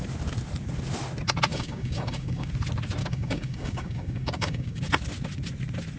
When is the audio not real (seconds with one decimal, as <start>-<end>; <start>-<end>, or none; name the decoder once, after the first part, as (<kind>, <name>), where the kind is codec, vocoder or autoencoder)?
1.5-2.5 (codec, DAC); 3.0-4.8